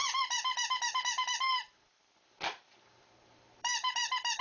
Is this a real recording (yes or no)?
no